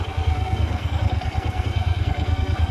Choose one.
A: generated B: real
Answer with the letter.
A